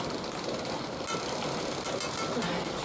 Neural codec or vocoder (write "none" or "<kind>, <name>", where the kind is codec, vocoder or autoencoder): none